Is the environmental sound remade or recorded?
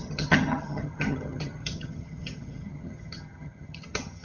remade